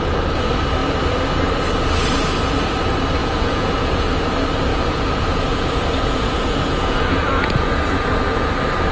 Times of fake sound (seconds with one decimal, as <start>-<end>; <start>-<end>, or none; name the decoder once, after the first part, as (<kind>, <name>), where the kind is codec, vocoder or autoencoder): 3.2-4.1 (vocoder, Vocos); 4.7-8.5